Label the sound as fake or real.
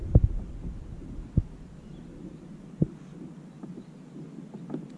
real